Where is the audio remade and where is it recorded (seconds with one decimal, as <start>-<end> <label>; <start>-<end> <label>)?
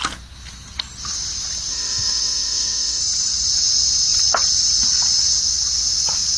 0.0-1.7 recorded; 1.7-3.0 remade; 3.0-6.4 recorded